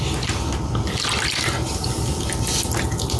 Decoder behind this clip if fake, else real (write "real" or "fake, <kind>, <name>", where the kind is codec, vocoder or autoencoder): real